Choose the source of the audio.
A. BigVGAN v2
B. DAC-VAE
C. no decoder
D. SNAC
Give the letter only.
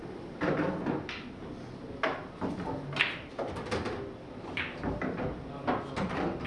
C